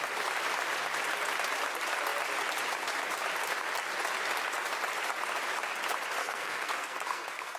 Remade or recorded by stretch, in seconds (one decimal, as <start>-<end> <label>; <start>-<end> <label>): 0.0-6.2 recorded; 6.2-7.6 remade